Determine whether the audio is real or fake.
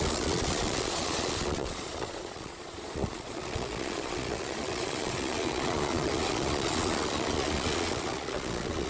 fake